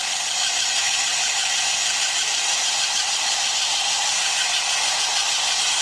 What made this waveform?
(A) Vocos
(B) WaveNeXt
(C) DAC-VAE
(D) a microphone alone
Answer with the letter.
D